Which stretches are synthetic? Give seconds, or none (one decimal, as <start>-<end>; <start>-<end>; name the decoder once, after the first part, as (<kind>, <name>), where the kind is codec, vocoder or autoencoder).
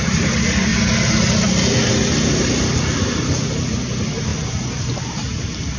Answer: 4.3-4.9 (vocoder, BigVGAN v2)